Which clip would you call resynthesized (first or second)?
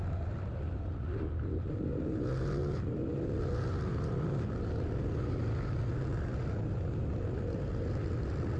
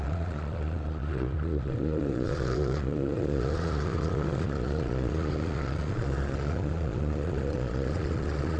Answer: second